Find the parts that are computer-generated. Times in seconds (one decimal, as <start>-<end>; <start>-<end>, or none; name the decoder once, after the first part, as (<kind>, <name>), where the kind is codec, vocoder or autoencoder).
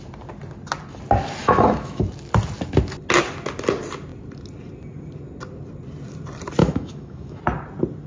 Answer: 1.4-2.0 (autoencoder, DAC-VAE); 6.6-7.4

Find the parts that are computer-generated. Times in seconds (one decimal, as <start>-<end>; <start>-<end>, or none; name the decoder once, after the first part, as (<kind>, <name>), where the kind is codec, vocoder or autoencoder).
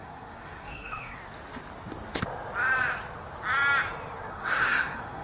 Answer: 0.0-1.2 (codec, SNAC); 4.3-5.2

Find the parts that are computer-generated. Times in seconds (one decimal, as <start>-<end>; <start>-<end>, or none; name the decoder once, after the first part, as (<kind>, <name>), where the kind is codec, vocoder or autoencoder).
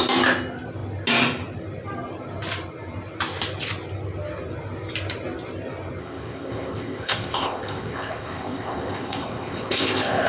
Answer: 6.0-10.3 (codec, ZipCodec)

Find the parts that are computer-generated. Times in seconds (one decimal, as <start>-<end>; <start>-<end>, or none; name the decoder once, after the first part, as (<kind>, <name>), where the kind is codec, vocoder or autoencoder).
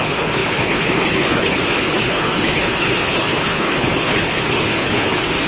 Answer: 0.0-5.5 (codec, HILCodec)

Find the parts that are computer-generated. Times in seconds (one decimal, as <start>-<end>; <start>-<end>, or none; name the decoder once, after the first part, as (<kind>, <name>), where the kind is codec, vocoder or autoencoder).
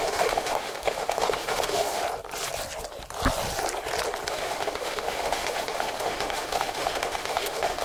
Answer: 0.0-2.0 (autoencoder, DAC-VAE); 4.3-7.8